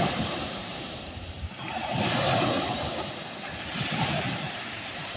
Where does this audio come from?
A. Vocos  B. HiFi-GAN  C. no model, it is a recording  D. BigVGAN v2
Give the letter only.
D